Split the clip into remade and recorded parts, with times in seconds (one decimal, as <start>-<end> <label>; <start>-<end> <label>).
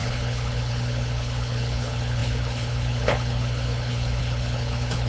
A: 0.0-5.1 remade